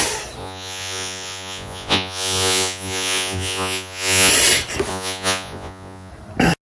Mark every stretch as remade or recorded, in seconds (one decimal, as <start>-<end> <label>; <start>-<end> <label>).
0.0-0.4 recorded; 0.4-4.3 remade; 4.3-4.9 recorded; 4.9-6.1 remade; 6.1-6.6 recorded

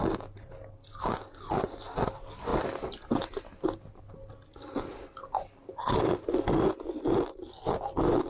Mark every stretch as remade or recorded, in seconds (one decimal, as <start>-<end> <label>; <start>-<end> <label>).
0.0-8.3 recorded